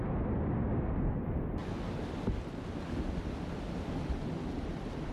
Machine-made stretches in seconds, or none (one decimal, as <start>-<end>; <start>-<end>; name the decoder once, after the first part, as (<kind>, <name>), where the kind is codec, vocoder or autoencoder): none